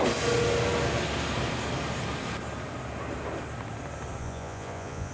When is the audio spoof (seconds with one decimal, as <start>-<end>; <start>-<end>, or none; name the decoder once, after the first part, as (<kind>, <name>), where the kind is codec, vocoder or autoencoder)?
4.2-5.1 (vocoder, Vocos)